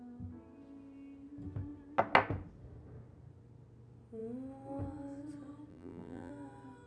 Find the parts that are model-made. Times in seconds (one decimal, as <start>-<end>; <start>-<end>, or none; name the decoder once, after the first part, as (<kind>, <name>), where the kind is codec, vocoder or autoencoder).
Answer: 5.7-6.3 (vocoder, BigVGAN v2)